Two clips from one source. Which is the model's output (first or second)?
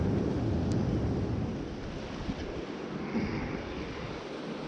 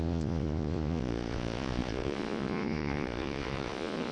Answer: second